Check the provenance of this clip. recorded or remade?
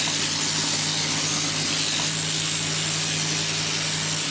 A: recorded